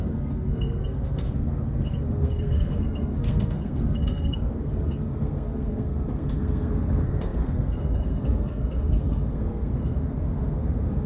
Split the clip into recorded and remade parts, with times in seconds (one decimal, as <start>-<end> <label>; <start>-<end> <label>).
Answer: 0.0-11.1 remade

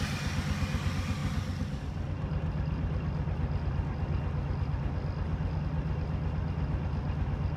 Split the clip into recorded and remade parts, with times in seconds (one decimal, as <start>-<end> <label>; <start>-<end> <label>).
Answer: 0.0-7.6 recorded